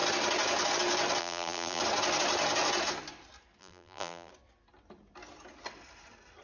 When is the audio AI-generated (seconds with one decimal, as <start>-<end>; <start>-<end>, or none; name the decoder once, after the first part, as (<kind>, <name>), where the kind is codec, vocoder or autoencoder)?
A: 1.2-1.8 (vocoder, BigVGAN v2); 3.6-4.3